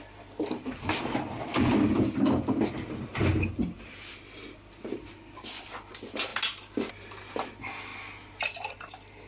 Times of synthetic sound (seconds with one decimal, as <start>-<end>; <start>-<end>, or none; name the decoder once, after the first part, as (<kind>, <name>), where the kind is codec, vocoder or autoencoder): none